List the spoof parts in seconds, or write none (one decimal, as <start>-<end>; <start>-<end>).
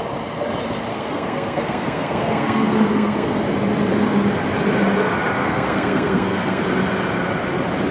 0.9-3.4; 5.4-6.6